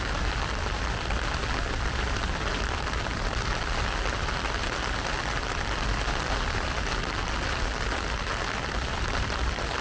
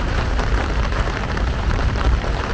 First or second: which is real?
first